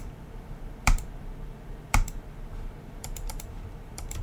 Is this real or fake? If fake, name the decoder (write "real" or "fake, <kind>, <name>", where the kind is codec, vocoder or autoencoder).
fake, vocoder, BigVGAN v2